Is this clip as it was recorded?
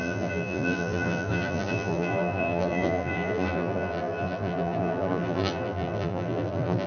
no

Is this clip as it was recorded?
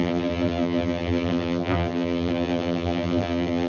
no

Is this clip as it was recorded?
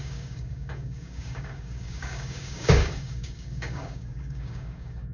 no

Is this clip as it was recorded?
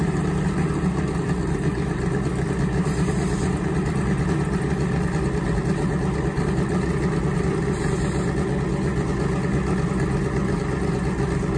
yes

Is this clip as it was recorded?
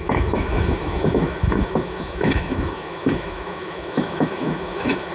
no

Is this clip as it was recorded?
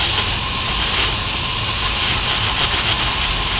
yes